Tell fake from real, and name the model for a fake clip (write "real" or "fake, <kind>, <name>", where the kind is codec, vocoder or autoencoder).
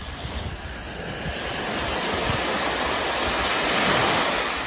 real